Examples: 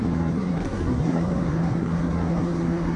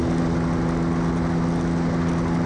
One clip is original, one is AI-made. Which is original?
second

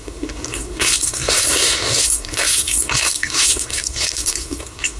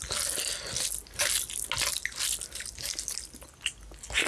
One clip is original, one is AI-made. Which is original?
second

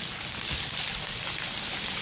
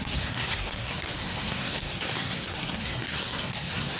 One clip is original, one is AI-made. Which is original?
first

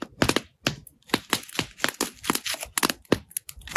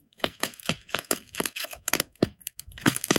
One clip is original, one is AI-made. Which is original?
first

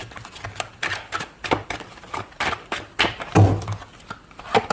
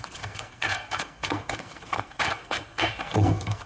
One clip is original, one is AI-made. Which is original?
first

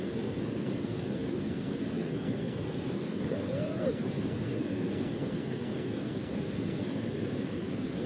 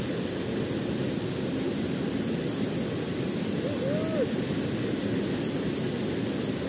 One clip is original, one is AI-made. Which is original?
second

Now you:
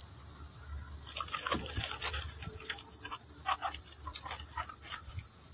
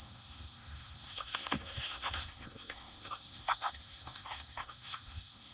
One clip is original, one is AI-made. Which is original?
first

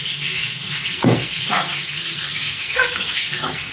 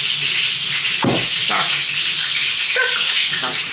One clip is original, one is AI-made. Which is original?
second